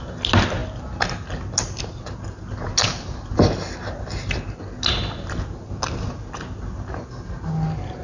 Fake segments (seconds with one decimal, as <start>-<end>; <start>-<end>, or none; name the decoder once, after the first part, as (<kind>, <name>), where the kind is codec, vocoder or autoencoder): none